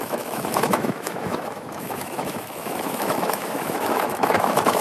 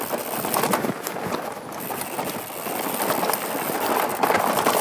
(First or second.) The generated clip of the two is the first